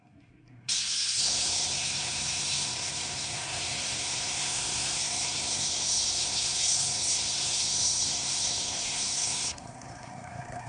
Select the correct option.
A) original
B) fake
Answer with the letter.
B